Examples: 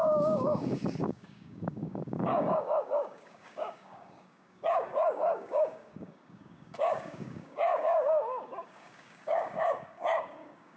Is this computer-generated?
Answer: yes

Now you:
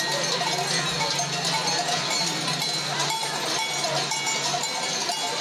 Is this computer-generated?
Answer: no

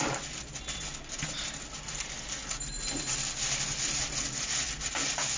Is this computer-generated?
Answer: no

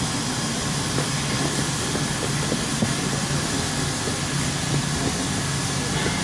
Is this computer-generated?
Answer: no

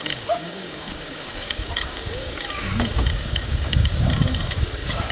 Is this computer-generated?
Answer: yes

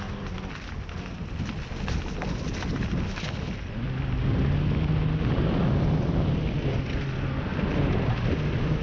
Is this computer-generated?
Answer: no